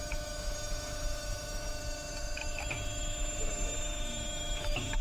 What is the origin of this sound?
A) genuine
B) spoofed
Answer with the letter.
B